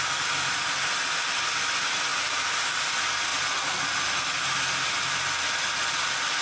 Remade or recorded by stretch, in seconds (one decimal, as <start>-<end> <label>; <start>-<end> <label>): 0.0-2.1 recorded; 2.1-2.8 remade; 2.8-6.4 recorded